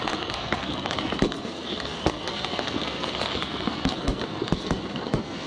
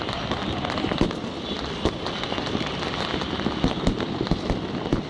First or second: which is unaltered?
second